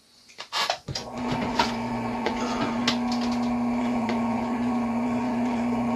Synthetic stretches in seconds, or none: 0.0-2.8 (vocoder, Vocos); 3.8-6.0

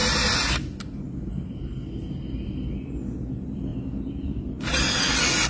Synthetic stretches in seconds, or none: none

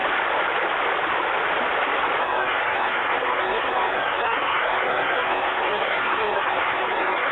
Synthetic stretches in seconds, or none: 2.2-7.3 (codec, SNAC)